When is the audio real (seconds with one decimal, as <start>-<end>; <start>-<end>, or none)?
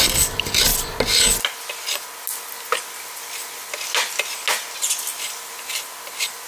0.0-6.5